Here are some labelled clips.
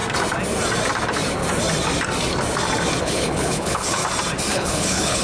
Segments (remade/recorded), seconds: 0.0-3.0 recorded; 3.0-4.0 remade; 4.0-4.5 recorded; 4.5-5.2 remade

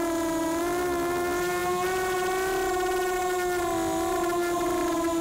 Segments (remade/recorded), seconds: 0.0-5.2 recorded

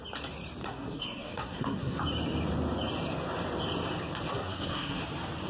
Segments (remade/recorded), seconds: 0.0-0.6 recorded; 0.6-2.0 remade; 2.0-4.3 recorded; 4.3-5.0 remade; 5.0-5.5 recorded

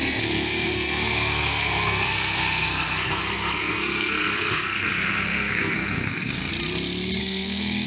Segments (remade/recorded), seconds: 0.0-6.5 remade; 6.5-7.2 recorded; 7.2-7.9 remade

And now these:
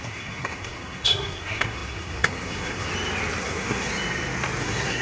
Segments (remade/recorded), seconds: 0.0-2.9 remade; 2.9-3.4 recorded; 3.4-3.9 remade; 3.9-4.6 recorded; 4.6-5.0 remade